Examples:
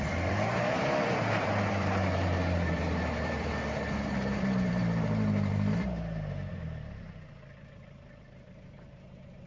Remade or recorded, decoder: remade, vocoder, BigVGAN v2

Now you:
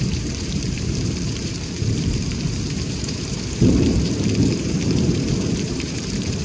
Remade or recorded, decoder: remade, vocoder, BigVGAN v2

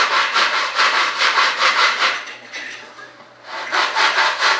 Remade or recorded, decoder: remade, vocoder, BigVGAN v2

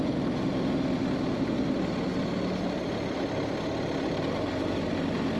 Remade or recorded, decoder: recorded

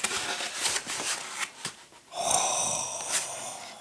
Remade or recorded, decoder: recorded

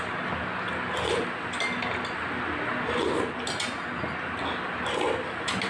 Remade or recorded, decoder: recorded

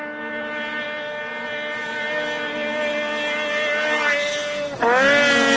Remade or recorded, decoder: recorded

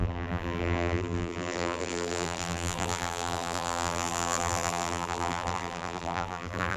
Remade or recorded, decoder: remade, vocoder, BigVGAN v2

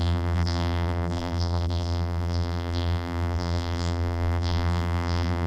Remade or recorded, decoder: remade, vocoder, BigVGAN v2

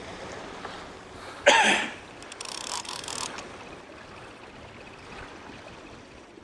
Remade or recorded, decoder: recorded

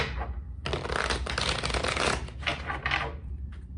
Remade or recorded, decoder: recorded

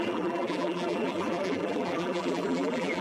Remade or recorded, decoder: remade, vocoder, BigVGAN v2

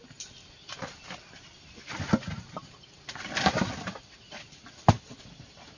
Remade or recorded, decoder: recorded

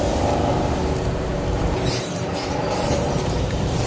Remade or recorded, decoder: remade, vocoder, BigVGAN v2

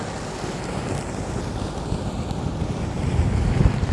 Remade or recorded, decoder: remade, vocoder, BigVGAN v2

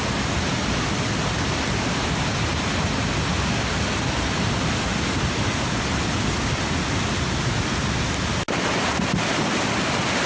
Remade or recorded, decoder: recorded